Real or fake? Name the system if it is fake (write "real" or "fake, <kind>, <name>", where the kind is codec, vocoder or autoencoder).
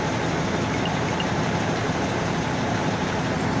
real